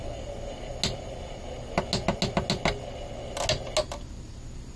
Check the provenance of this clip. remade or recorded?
recorded